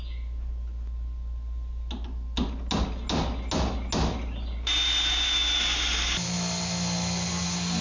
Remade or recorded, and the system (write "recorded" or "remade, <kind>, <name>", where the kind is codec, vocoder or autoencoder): recorded